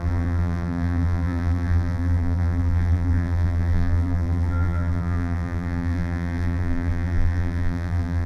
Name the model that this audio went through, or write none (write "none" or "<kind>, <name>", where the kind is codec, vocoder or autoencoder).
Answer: vocoder, BigVGAN v2